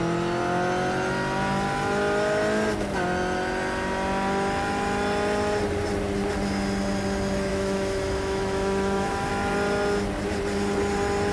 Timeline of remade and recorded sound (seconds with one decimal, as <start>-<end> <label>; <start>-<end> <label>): 0.0-7.5 recorded; 7.5-9.3 remade; 9.3-11.3 recorded